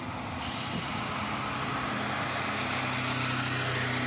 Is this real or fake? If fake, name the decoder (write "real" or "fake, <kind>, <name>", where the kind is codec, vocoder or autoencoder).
real